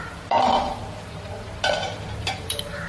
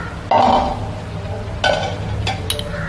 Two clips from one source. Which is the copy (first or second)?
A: first